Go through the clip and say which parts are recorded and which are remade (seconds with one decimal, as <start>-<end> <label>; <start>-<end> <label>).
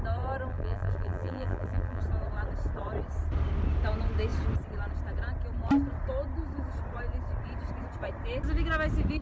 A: 0.0-0.5 recorded; 0.5-2.0 remade; 2.0-9.2 recorded